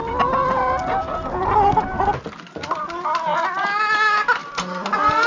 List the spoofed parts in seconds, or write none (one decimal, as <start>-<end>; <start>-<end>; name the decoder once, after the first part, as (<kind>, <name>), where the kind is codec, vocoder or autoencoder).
4.4-5.3 (vocoder, BigVGAN v2)